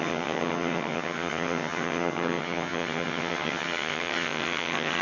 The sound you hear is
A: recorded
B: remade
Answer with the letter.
B